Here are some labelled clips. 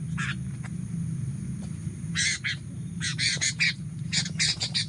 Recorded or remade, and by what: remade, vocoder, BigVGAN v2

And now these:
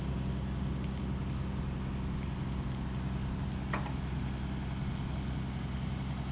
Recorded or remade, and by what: recorded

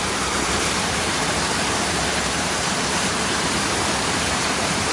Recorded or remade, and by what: remade, vocoder, BigVGAN v2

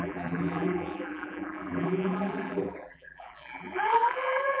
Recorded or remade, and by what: remade, vocoder, BigVGAN v2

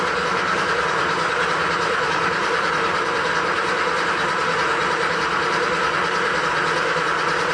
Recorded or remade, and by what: remade, vocoder, BigVGAN v2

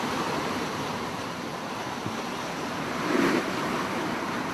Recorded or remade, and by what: remade, vocoder, BigVGAN v2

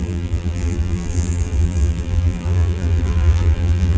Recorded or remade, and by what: remade, vocoder, BigVGAN v2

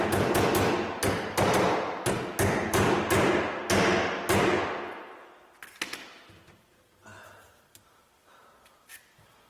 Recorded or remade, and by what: recorded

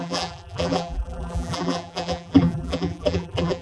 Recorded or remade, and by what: remade, vocoder, BigVGAN v2